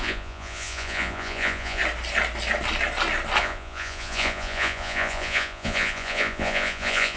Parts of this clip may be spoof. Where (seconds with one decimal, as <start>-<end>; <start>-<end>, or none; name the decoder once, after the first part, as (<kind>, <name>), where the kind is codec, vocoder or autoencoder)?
0.0-1.8 (vocoder, Vocos); 3.4-7.2